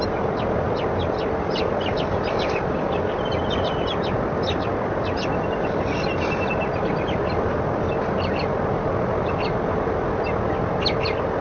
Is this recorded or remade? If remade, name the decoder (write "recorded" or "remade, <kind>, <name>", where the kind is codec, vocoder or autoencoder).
recorded